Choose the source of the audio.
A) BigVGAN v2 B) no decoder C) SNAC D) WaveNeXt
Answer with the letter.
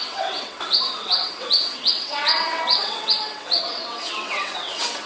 D